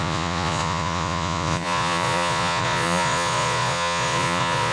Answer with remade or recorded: remade